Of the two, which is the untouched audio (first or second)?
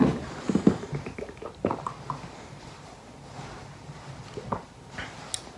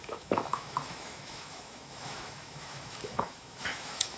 first